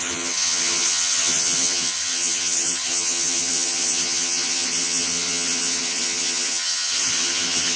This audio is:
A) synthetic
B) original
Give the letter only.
A